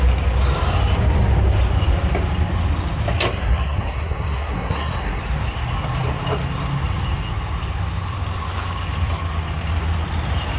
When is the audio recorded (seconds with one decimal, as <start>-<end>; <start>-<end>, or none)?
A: 0.0-3.3; 5.2-10.6